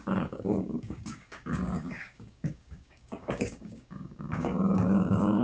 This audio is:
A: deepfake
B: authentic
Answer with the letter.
A